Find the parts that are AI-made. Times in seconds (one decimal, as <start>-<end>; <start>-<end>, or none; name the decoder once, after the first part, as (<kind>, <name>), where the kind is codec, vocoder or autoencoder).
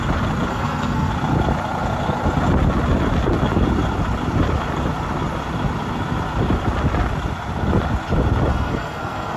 0.5-1.1 (codec, SNAC); 8.5-9.4